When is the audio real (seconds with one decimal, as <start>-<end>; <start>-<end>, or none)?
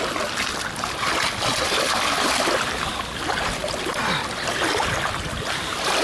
3.6-4.9